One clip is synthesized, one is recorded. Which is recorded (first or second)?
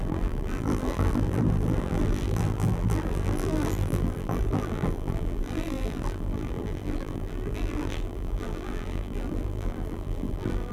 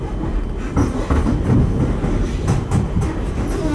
second